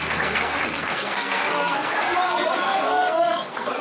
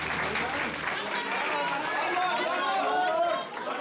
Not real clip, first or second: first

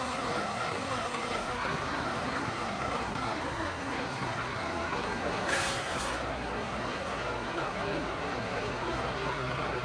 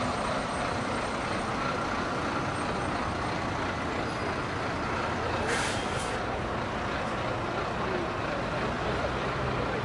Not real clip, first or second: first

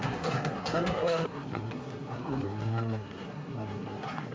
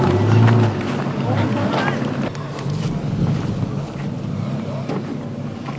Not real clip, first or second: first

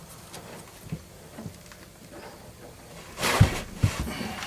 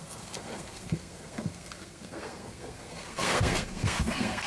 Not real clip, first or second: second